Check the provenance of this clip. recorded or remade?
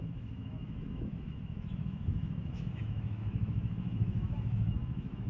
remade